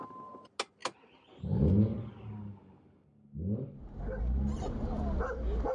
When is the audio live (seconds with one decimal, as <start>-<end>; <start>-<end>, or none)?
0.0-5.7